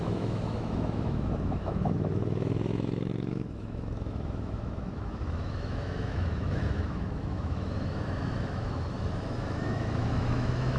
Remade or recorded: remade